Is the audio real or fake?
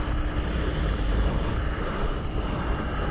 real